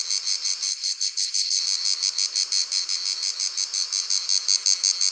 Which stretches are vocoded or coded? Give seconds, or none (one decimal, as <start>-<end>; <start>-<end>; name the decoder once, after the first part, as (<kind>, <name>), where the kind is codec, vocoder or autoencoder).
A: 0.7-1.6 (codec, HILCodec)